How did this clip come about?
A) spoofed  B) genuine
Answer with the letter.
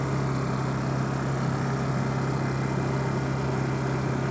B